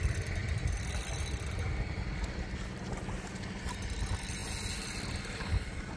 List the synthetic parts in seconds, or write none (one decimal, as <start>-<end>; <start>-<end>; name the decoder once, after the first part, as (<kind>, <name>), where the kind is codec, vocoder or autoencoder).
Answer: none